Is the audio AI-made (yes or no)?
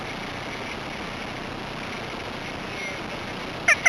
no